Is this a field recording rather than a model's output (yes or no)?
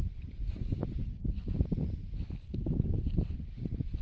yes